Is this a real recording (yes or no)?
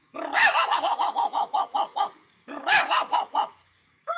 no